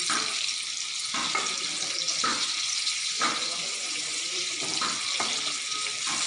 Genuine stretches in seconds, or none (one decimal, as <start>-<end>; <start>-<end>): 0.0-2.3; 4.6-6.3